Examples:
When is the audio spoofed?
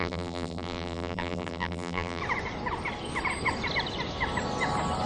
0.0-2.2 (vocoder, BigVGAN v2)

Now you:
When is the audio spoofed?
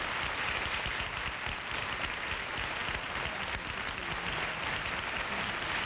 none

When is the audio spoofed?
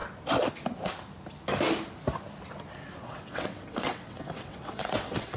3.0-5.4 (vocoder, WaveNeXt)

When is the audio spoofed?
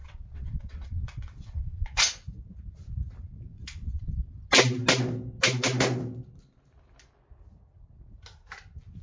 0.0-2.0 (vocoder, WaveNeXt); 3.5-4.1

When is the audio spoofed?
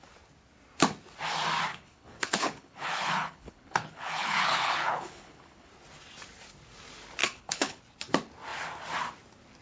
1.7-5.7 (codec, HILCodec); 7.2-7.8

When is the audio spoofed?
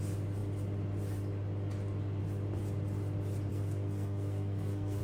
3.5-5.0 (codec, SNAC)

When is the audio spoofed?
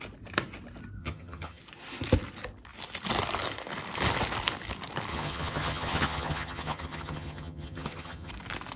1.0-1.6 (vocoder, HiFi-GAN); 5.1-8.3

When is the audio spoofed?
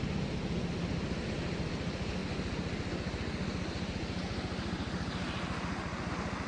none